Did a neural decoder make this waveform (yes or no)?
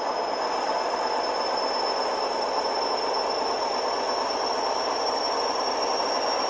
no